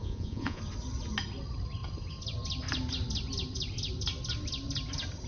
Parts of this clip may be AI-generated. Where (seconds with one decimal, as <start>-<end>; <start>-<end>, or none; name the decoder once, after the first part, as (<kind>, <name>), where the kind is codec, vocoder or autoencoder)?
0.0-0.6 (vocoder, Vocos)